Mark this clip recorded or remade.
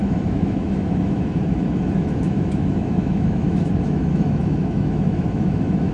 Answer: remade